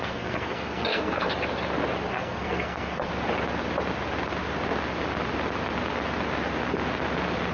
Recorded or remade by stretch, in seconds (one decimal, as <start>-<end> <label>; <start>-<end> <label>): 0.0-1.3 remade; 1.3-2.1 recorded; 2.1-3.1 remade; 3.1-7.5 recorded